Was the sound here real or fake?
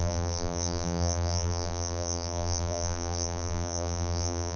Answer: fake